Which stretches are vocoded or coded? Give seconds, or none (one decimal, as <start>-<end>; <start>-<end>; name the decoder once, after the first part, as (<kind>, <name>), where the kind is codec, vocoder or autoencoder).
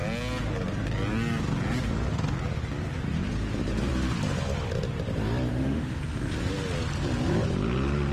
5.5-6.0 (autoencoder, DAC-VAE)